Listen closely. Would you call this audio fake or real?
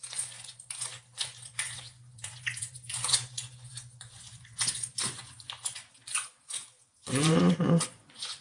fake